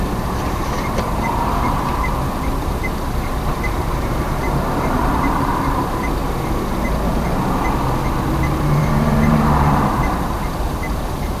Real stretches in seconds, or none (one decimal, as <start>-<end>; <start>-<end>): 6.2-8.2